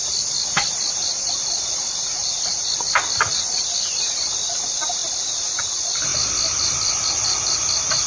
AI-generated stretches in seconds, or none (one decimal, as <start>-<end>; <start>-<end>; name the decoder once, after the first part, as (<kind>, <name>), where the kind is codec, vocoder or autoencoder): 0.0-6.1 (vocoder, BigVGAN v2); 7.1-8.1